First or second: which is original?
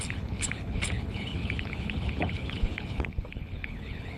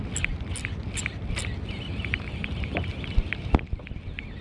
second